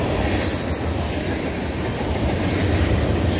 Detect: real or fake fake